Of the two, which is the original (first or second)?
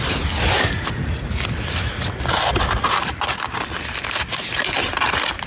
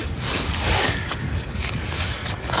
first